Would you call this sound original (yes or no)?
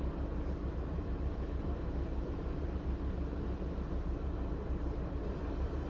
no